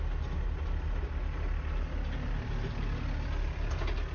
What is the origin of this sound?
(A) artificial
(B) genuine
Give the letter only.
B